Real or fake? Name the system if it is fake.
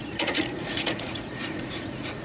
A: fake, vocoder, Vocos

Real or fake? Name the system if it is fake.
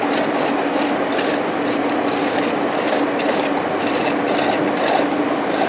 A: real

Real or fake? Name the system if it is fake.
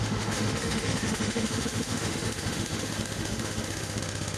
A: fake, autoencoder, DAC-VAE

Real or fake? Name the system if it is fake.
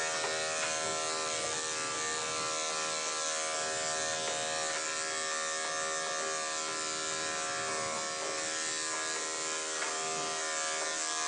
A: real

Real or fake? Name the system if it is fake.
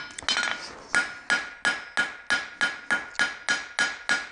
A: real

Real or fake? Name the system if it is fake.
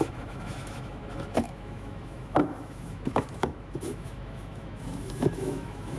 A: fake, autoencoder, DAC-VAE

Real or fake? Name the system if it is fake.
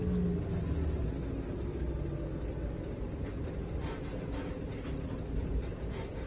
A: real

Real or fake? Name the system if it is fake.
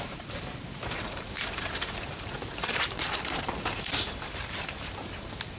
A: fake, vocoder, BigVGAN v2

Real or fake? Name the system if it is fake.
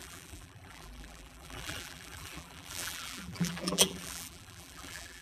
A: fake, vocoder, BigVGAN v2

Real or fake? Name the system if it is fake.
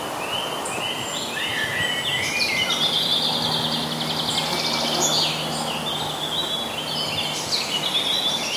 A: real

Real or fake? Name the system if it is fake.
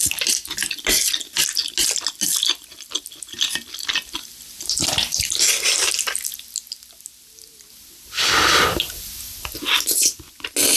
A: real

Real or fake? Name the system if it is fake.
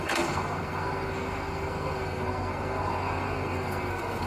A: fake, codec, SNAC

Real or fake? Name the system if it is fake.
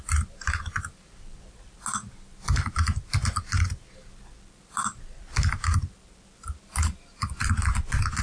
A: real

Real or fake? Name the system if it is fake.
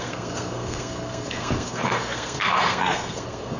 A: fake, codec, SNAC